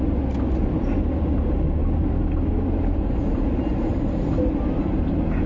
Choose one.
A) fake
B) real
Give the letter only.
B